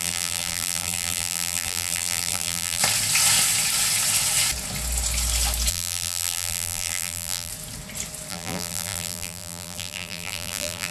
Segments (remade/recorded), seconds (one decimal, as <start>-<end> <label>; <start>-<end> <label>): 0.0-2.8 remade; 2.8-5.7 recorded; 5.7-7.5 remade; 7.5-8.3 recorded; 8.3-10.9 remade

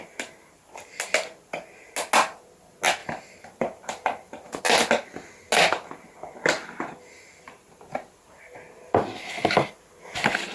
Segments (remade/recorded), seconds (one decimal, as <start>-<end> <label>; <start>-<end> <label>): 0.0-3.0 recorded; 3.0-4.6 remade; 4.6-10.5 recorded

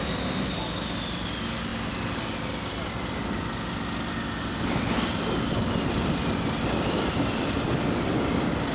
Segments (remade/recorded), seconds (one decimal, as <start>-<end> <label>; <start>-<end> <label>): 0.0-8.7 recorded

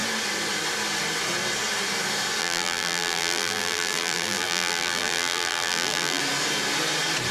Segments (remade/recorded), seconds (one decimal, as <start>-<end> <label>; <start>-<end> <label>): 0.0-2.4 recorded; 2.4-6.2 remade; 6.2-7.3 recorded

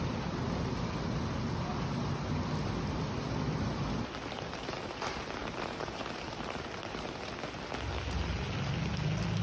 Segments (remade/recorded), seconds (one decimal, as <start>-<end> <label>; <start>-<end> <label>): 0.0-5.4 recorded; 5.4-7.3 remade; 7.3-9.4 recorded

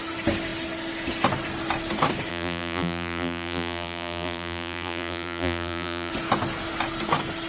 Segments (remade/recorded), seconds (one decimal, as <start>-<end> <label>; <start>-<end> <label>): 0.0-2.3 recorded; 2.3-6.1 remade; 6.1-7.5 recorded